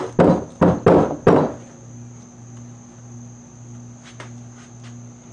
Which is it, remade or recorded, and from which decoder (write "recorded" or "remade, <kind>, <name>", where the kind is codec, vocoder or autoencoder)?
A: recorded